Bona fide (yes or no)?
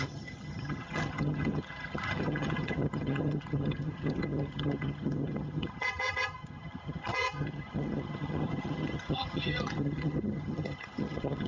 no